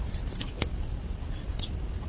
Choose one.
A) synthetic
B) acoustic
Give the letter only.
B